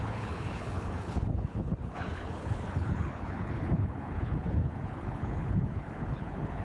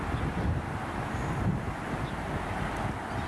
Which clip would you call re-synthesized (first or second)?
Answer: first